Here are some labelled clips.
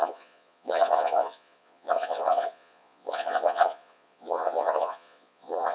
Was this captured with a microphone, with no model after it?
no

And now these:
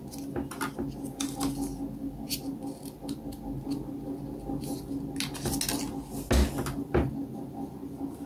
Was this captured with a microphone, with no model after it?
yes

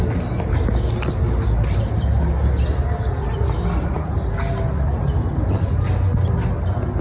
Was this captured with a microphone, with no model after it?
yes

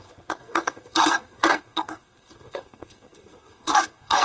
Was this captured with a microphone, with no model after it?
no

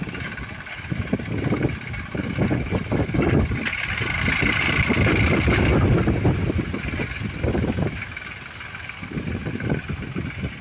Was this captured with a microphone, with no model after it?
yes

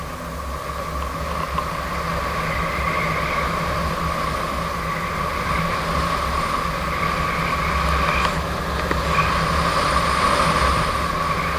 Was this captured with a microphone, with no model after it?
yes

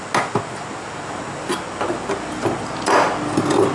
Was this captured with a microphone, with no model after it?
yes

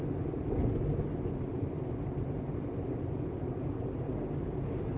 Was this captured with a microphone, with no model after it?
yes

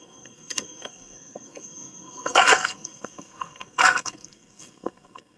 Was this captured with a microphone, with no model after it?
no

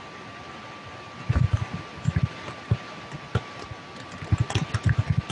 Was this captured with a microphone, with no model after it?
no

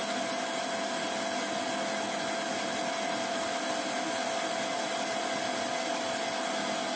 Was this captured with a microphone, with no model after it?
yes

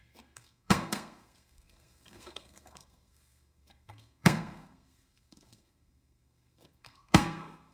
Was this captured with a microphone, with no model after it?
no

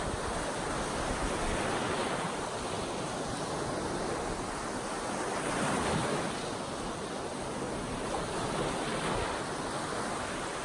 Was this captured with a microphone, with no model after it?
yes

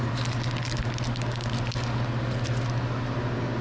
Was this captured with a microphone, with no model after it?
yes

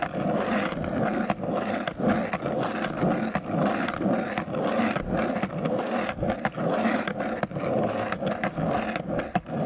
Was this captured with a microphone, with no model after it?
yes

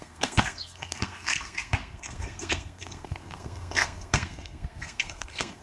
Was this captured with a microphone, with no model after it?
no